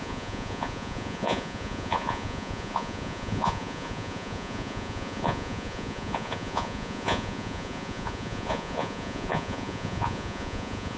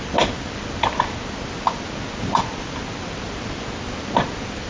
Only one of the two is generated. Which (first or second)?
first